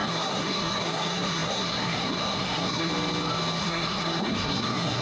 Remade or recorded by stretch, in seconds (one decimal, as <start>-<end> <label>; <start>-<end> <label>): 0.0-2.9 remade; 2.9-3.6 recorded; 3.6-5.0 remade